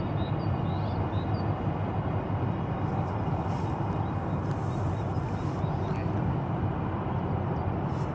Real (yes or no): yes